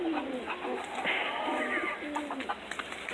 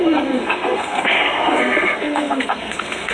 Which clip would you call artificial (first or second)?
second